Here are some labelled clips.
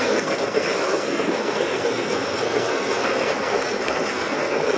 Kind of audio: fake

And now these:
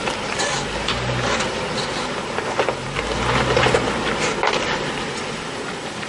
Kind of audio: real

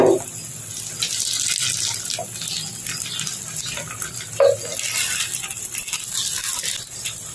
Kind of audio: real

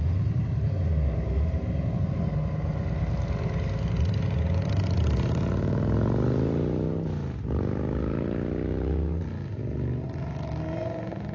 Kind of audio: real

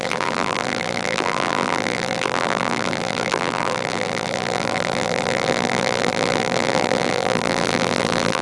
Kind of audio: fake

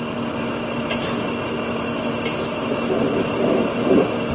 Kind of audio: real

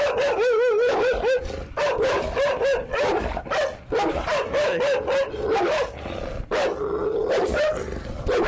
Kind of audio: real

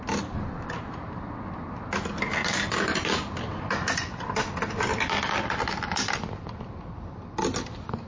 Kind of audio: real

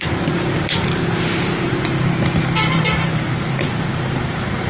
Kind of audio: fake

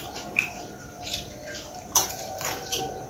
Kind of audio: fake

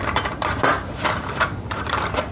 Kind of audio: fake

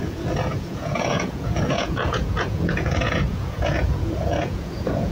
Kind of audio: fake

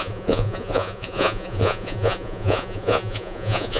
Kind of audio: fake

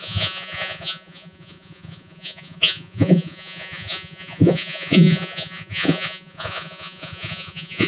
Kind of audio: fake